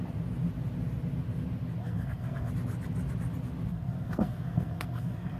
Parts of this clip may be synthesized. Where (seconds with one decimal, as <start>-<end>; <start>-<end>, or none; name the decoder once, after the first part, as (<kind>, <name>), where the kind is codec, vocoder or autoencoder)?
1.8-2.5 (codec, SNAC); 3.7-5.4